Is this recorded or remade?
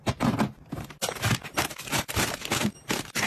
recorded